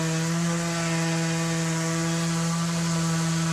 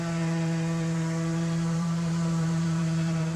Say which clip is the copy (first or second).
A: second